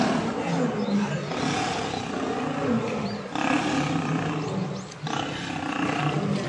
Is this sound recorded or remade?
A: recorded